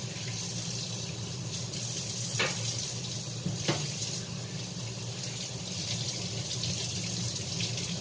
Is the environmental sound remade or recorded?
recorded